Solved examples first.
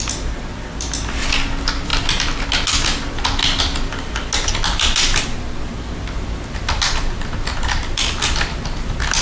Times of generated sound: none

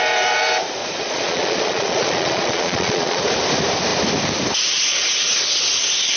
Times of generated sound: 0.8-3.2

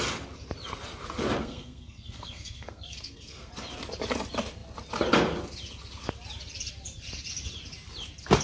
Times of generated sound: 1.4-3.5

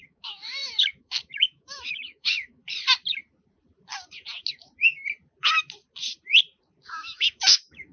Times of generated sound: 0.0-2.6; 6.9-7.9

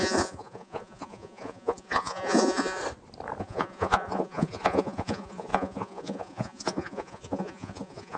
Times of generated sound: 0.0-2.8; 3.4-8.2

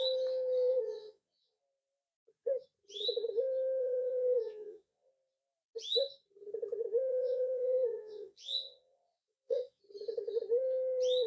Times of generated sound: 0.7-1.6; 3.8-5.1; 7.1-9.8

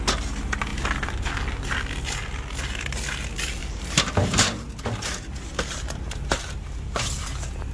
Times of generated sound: 3.6-7.2